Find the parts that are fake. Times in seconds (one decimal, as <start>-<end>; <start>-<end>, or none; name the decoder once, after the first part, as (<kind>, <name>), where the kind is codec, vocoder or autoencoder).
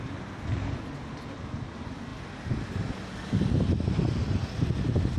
none